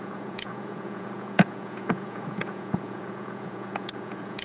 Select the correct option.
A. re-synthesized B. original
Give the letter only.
A